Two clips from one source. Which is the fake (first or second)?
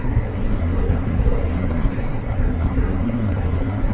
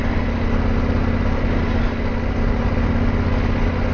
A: first